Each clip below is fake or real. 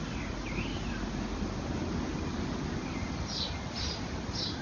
real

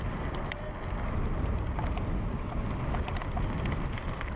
real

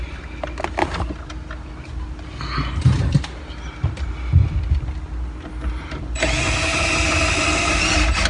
real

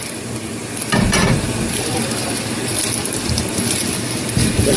fake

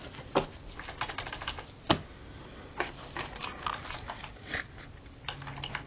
real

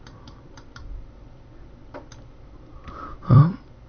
fake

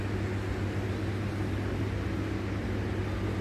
real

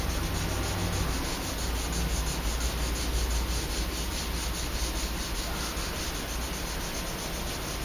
real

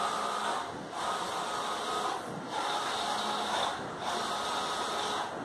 real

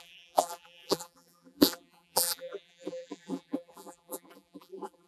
fake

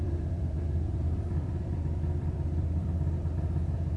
fake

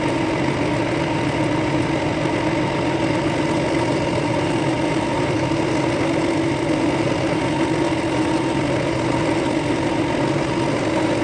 real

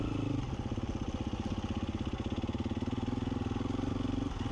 real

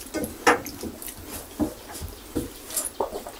real